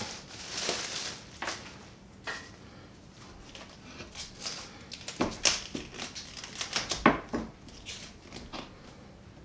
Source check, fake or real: real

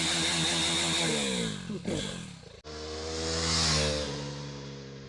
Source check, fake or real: real